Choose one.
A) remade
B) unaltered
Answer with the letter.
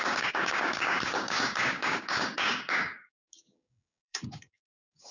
A